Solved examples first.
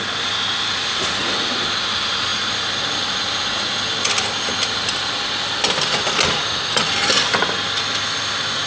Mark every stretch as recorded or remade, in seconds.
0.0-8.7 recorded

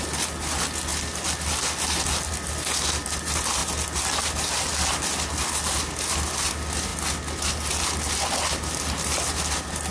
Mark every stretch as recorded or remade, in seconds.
0.0-9.9 recorded

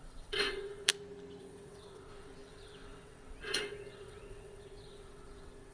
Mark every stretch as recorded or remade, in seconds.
0.0-0.9 remade; 0.9-1.4 recorded; 1.4-5.7 remade

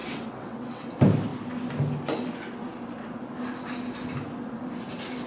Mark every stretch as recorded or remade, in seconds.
0.0-0.9 remade; 0.9-5.3 recorded

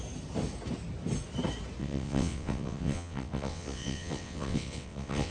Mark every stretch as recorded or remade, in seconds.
0.0-1.8 recorded; 1.8-5.3 remade

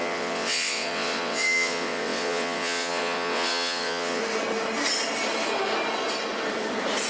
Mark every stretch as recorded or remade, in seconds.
0.0-4.2 remade; 4.2-7.1 recorded